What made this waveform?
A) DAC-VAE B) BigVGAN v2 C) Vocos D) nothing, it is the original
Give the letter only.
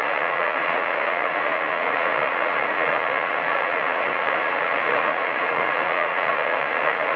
C